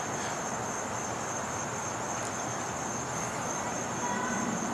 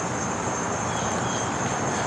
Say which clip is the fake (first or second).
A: second